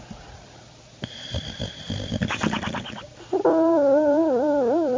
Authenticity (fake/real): fake